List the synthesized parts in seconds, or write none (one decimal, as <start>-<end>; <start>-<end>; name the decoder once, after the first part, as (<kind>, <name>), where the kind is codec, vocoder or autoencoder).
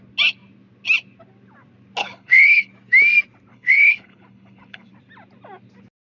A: 2.0-2.7 (codec, HILCodec); 3.5-4.9